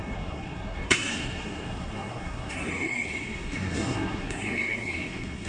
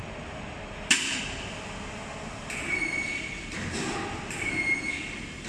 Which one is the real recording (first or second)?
second